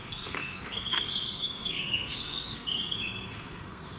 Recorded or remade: remade